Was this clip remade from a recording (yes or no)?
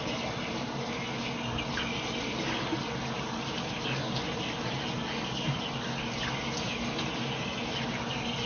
no